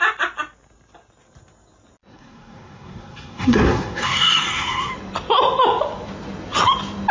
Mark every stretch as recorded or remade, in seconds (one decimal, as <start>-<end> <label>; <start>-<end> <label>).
0.0-2.1 recorded; 2.1-4.9 remade; 4.9-7.1 recorded